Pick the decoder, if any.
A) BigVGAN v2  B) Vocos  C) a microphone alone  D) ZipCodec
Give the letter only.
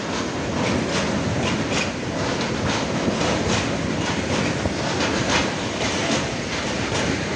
C